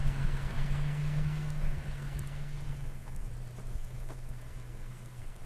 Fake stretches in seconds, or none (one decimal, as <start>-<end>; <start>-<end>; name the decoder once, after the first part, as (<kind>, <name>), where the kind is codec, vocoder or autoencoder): 0.0-3.3 (codec, SNAC); 3.7-5.5